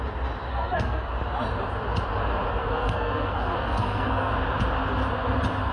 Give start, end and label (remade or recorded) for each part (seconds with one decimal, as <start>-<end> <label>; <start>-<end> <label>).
0.0-0.5 recorded; 0.5-1.1 remade; 1.1-2.6 recorded; 2.6-4.3 remade; 4.3-5.7 recorded